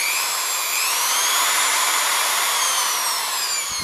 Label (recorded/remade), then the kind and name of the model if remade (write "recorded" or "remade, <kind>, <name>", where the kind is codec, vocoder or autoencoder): remade, vocoder, BigVGAN v2